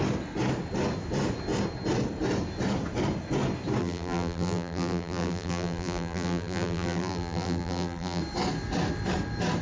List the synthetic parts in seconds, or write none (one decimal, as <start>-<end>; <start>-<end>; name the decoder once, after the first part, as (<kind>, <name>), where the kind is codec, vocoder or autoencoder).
3.8-8.2 (vocoder, BigVGAN v2)

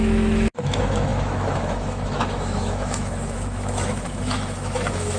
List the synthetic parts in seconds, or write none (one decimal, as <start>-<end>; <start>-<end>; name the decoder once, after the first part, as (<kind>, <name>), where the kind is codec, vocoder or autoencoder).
0.0-5.2 (autoencoder, DAC-VAE)

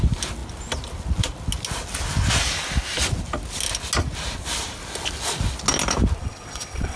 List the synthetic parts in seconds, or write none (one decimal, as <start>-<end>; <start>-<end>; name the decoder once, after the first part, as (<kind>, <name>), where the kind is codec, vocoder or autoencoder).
6.2-7.0 (vocoder, WaveNeXt)

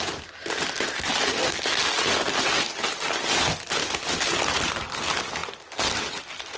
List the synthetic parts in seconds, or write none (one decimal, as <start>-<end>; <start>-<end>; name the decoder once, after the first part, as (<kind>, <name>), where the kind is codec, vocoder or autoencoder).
none

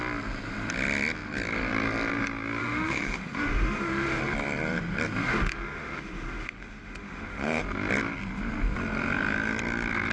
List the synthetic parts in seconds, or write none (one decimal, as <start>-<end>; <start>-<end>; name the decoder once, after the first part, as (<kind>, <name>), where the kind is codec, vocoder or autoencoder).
2.6-4.2 (autoencoder, DAC-VAE); 5.2-7.6

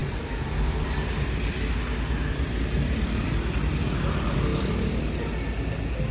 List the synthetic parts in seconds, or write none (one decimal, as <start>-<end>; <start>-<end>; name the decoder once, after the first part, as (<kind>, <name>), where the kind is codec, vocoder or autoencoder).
0.0-3.7 (vocoder, BigVGAN v2)

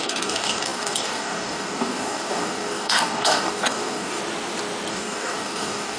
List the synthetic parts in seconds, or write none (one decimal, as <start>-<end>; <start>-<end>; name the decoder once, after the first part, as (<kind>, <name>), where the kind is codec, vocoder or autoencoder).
0.0-4.2 (codec, DAC); 4.9-6.0

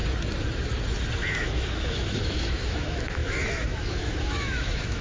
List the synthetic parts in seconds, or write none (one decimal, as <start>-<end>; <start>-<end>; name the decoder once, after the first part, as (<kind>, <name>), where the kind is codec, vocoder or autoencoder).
1.3-5.0 (autoencoder, DAC-VAE)